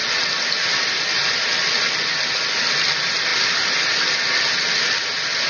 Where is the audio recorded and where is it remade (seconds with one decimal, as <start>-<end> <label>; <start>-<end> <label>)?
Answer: 0.0-5.5 recorded